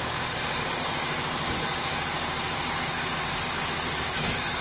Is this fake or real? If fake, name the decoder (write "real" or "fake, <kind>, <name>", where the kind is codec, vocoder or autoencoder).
fake, codec, DAC